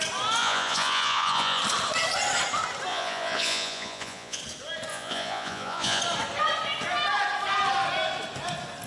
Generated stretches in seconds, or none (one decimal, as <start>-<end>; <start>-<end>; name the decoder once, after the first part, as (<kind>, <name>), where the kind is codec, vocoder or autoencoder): 0.4-1.6 (vocoder, Vocos); 2.9-4.4; 4.9-6.0